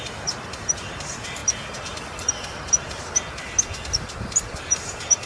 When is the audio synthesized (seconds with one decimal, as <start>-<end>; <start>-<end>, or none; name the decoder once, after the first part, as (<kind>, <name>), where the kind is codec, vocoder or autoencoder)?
0.0-1.4 (vocoder, BigVGAN v2); 4.6-5.3